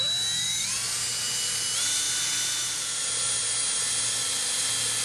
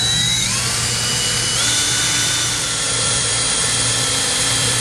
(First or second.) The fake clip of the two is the second